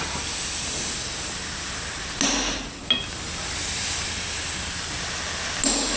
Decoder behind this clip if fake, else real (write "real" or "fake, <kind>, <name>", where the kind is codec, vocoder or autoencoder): real